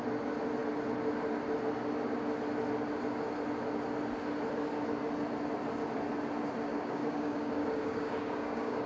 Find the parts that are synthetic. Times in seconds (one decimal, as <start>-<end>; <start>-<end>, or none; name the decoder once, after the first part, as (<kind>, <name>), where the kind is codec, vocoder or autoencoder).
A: 6.7-8.9 (codec, DAC)